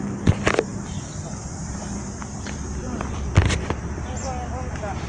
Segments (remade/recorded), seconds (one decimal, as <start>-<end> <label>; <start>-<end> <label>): 0.0-0.7 recorded; 0.7-3.8 remade; 3.8-5.1 recorded